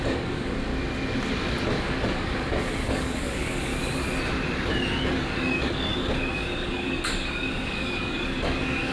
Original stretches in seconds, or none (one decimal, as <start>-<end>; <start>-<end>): 0.7-1.6; 3.7-5.0

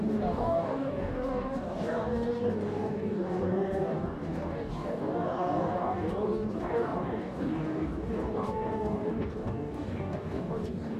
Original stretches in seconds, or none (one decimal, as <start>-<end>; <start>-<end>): none

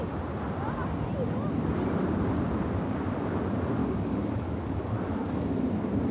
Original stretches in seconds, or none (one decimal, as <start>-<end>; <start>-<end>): 0.0-3.8; 5.5-6.1

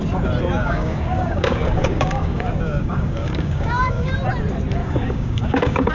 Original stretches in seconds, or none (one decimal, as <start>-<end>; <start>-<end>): 0.0-0.6; 4.1-4.8

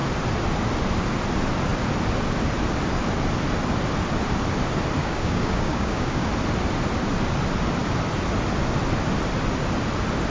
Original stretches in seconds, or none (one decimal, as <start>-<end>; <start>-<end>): 0.0-5.0; 6.3-10.3

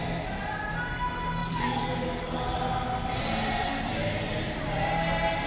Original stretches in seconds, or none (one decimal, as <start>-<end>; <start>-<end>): 0.0-1.4; 2.4-5.5

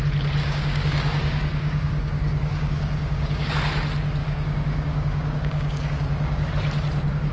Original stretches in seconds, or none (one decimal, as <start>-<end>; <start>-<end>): 0.0-0.4; 3.5-4.2; 6.5-7.3

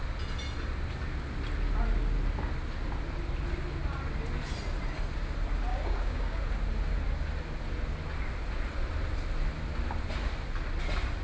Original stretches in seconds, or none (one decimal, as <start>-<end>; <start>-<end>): 0.0-5.7; 6.4-11.2